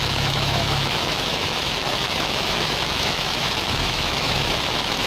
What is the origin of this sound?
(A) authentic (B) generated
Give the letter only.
B